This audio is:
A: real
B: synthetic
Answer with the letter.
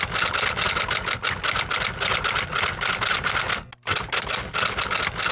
A